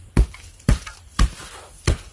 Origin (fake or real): fake